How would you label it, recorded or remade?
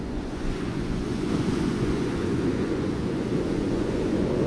remade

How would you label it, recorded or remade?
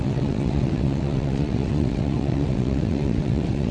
remade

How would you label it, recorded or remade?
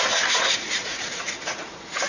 remade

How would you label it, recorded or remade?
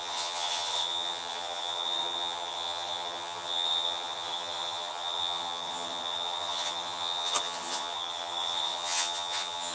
remade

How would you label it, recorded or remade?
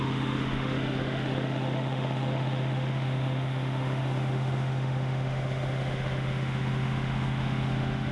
remade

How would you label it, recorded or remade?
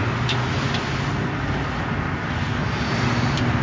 recorded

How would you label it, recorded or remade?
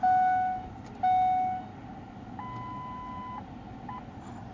recorded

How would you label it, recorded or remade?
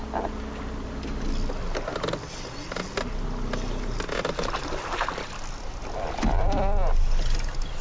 recorded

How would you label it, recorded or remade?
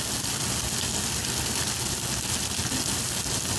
recorded